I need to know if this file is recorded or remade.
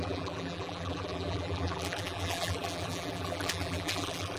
remade